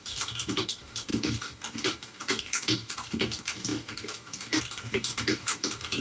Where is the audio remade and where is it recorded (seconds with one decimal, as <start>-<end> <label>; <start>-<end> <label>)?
0.0-6.0 remade

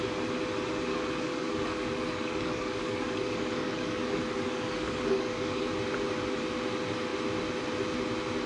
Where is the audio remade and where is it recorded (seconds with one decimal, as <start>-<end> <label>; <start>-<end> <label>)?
0.0-0.9 recorded; 0.9-5.7 remade; 5.7-8.5 recorded

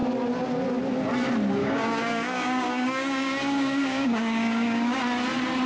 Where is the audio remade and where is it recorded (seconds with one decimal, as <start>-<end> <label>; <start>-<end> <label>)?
0.0-1.6 recorded; 1.6-5.0 remade; 5.0-5.7 recorded